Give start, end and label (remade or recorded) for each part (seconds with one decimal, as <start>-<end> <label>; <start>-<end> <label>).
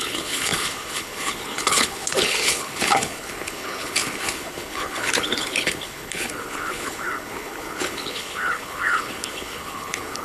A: 0.0-10.2 remade